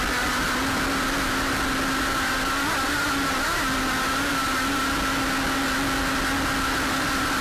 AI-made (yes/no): no